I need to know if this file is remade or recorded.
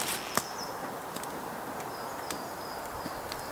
recorded